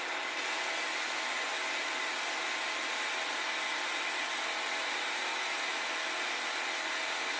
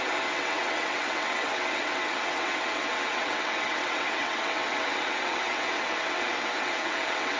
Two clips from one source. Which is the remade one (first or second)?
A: second